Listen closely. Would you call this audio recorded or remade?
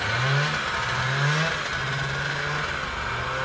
recorded